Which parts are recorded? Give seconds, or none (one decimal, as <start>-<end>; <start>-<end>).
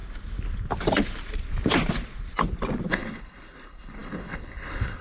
0.0-2.9